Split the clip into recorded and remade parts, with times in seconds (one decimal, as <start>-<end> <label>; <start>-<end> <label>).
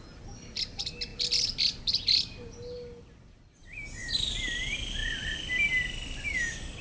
0.0-6.8 recorded